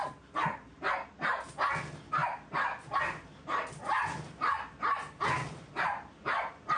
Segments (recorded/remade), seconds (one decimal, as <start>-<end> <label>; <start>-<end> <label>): 0.0-6.8 recorded